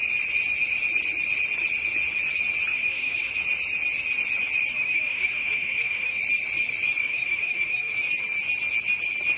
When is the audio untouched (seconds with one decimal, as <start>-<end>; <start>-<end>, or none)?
0.0-2.7; 3.3-4.7; 6.2-7.0; 7.9-9.4